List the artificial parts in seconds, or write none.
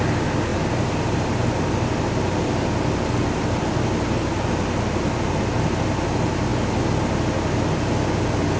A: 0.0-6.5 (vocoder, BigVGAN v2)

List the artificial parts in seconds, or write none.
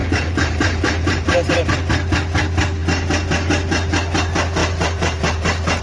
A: 0.0-1.6 (vocoder, BigVGAN v2); 4.6-5.8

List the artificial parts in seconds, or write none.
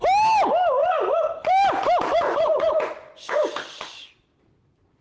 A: 0.8-1.5 (vocoder, Vocos); 2.1-4.1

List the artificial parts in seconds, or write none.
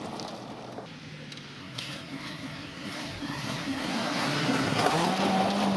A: 1.6-5.1 (codec, SNAC)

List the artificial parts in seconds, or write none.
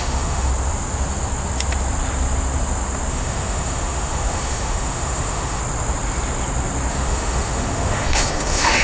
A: 0.0-0.5 (autoencoder, DAC-VAE); 3.1-5.6; 6.9-8.8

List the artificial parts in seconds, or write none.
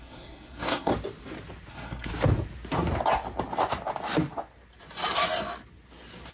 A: 0.0-0.9 (codec, SNAC); 1.7-2.1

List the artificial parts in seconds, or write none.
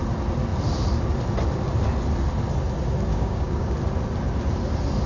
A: 3.1-3.7 (codec, DAC)